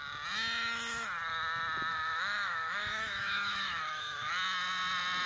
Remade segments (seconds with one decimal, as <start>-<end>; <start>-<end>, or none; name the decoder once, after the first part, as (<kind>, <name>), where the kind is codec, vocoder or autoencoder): 1.9-4.3 (autoencoder, DAC-VAE)